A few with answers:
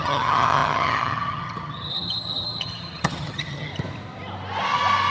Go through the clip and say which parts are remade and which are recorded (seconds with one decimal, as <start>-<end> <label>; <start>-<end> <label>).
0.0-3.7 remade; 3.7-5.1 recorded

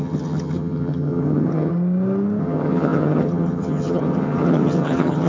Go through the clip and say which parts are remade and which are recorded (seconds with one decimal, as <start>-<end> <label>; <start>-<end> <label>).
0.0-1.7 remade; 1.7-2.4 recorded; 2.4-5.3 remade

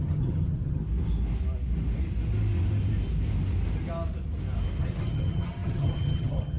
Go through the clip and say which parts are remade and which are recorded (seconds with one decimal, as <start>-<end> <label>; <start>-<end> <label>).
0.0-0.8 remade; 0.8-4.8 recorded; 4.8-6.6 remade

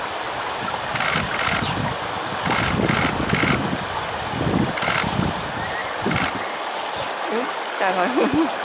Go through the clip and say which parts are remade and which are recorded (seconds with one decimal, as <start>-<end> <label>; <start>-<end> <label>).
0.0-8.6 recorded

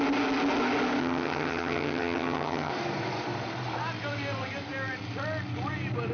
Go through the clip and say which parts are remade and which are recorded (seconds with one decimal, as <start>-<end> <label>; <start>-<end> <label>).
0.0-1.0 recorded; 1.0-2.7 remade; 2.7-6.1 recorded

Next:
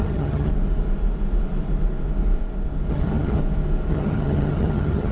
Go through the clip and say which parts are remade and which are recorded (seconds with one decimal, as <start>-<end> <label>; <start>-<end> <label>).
0.0-0.5 remade; 0.5-2.9 recorded; 2.9-3.4 remade; 3.4-3.9 recorded; 3.9-5.1 remade

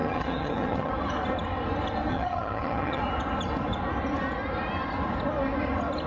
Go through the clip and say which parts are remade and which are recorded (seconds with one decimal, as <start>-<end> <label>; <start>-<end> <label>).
0.0-0.9 remade; 0.9-2.1 recorded; 2.1-3.0 remade; 3.0-6.1 recorded

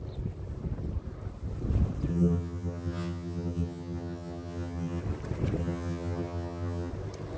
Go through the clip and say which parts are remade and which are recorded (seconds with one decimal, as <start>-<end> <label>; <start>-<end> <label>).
0.0-2.1 recorded; 2.1-5.0 remade; 5.0-5.6 recorded; 5.6-6.9 remade; 6.9-7.4 recorded